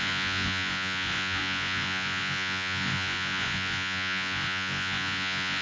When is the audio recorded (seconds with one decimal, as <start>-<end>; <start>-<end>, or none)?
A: none